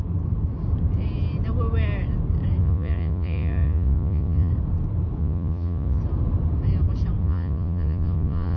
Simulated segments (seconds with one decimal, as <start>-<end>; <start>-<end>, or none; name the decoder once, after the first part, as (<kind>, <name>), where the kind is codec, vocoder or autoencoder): 2.6-4.5 (vocoder, Vocos); 5.2-6.0; 7.2-8.6